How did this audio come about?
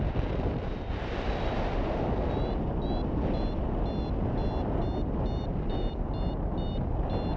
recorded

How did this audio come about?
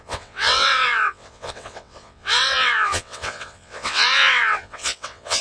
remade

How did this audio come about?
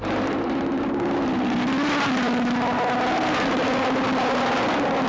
recorded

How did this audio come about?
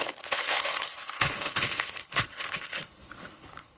remade